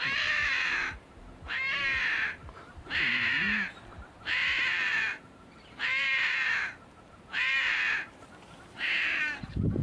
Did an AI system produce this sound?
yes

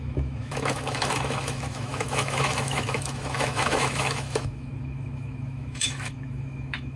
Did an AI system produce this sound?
yes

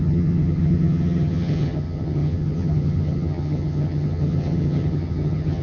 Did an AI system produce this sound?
yes